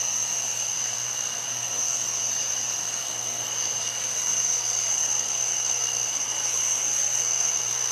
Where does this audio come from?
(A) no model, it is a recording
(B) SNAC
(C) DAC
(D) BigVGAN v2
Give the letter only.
B